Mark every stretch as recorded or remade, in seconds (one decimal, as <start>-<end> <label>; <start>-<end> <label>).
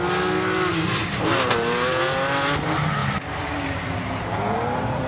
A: 0.0-1.0 recorded; 1.0-1.9 remade; 1.9-3.0 recorded; 3.0-5.1 remade